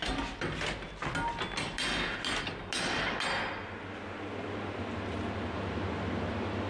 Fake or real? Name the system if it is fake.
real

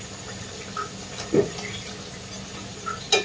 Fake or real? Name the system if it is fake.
real